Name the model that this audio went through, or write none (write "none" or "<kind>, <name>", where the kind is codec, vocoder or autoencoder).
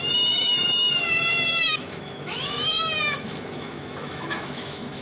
autoencoder, DAC-VAE